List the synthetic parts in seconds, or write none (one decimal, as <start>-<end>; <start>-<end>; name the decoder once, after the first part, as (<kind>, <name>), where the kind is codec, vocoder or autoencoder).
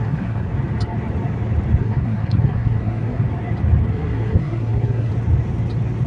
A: 0.0-0.5 (codec, SNAC); 1.8-3.2; 3.9-5.1